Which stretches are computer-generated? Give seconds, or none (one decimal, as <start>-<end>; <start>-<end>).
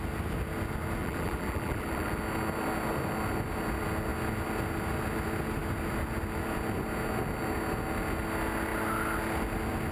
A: 1.0-2.2